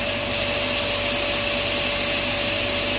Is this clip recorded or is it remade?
recorded